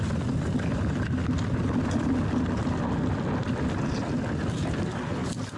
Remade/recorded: recorded